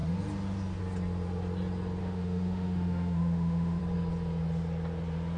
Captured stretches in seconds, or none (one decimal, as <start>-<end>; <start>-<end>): 0.0-2.0; 3.8-5.4